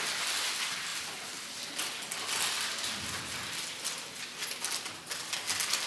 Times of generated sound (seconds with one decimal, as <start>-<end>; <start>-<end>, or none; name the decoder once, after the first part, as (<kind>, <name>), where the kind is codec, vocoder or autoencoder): none